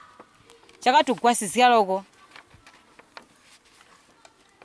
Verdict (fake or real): real